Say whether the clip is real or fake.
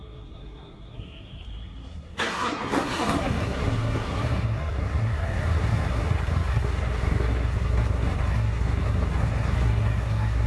fake